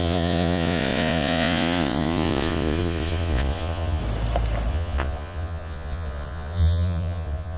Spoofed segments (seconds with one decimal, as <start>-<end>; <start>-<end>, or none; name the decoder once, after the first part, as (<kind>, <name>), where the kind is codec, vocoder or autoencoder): 0.0-4.0 (vocoder, Vocos); 4.7-7.6